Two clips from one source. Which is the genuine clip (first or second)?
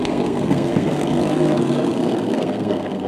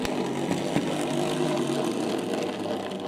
second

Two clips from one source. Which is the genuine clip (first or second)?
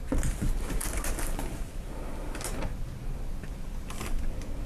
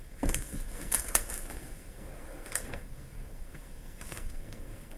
first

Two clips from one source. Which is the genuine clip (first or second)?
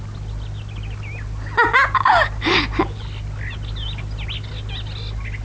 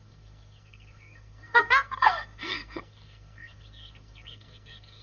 first